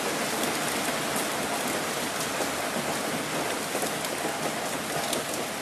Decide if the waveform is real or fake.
real